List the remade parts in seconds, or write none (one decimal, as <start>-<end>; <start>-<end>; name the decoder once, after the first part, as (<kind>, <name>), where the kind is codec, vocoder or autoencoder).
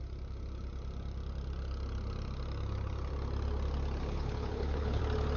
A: 4.0-5.0 (codec, HILCodec)